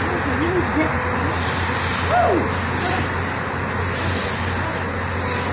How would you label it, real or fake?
real